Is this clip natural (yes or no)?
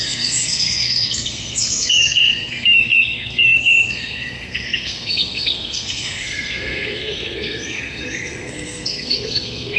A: no